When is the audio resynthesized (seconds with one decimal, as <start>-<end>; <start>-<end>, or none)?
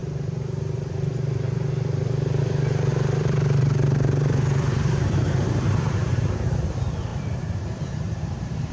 2.9-6.3; 7.1-8.7